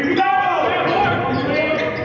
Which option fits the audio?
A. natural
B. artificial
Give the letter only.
A